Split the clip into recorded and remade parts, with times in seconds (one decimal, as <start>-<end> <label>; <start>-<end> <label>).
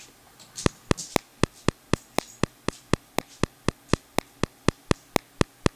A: 0.0-1.3 recorded; 1.3-4.8 remade; 4.8-5.8 recorded